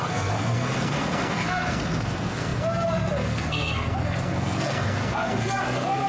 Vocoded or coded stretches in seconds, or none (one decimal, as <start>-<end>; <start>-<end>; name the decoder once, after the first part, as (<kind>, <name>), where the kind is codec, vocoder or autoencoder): 0.0-6.1 (codec, SNAC)